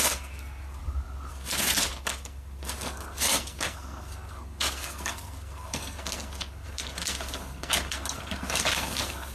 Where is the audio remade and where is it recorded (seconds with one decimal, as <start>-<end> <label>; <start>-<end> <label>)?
0.0-0.8 remade; 0.8-1.3 recorded; 1.3-9.3 remade